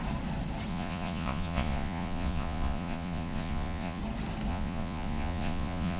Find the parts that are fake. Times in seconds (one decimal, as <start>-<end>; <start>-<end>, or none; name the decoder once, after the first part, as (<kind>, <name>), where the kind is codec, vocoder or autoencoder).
0.7-4.0 (vocoder, Vocos); 4.5-6.0